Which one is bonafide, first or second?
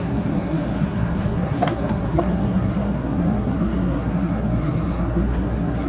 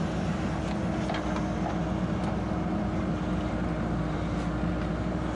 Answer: second